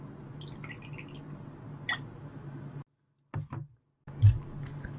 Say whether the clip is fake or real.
real